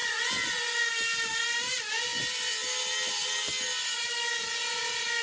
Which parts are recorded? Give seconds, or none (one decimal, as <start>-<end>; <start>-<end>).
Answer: 0.0-5.2